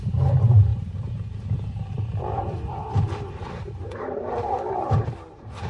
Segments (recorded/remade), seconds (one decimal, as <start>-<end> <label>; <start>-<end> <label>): 0.0-5.7 remade

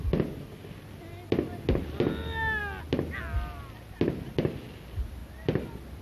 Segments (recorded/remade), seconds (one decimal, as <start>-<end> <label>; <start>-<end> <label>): 0.0-5.2 recorded; 5.2-6.0 remade

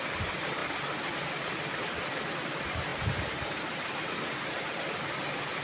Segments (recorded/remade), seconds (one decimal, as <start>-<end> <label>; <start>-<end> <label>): 0.0-5.6 recorded

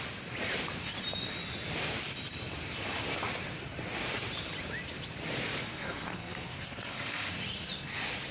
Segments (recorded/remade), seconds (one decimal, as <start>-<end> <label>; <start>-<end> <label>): 0.0-5.6 recorded; 5.6-7.3 remade; 7.3-8.3 recorded

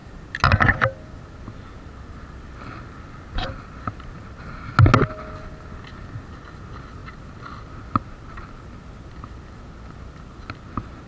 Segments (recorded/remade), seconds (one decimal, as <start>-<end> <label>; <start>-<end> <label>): 0.0-11.1 recorded

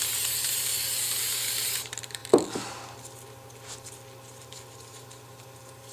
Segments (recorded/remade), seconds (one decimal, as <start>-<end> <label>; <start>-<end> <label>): 0.0-0.7 remade; 0.7-1.2 recorded; 1.2-2.2 remade; 2.2-4.4 recorded; 4.4-5.9 remade

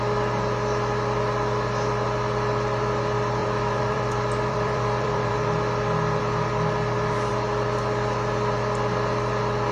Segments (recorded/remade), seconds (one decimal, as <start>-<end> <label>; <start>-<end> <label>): 0.0-3.4 recorded; 3.4-5.3 remade; 5.3-9.7 recorded

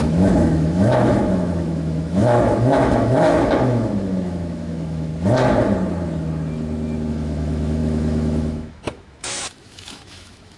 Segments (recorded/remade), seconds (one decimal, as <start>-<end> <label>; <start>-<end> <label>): 0.0-5.1 remade; 5.1-7.1 recorded; 7.1-10.6 remade